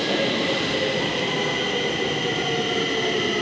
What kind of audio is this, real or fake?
real